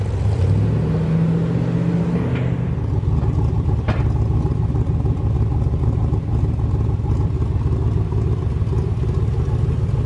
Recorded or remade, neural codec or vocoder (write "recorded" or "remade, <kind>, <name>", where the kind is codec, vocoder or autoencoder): recorded